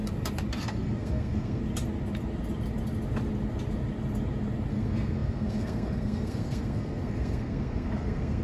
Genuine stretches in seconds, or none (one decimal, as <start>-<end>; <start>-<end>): 0.0-0.6; 1.6-4.7